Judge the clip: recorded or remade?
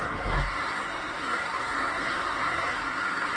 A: remade